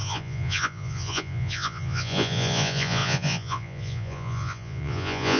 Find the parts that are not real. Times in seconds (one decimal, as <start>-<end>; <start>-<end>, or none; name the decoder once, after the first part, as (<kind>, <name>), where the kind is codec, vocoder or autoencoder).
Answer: 0.0-5.4 (vocoder, Vocos)